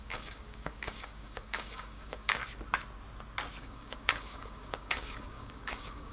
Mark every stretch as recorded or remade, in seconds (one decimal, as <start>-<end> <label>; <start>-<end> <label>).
0.0-2.4 remade; 2.4-3.6 recorded; 3.6-6.1 remade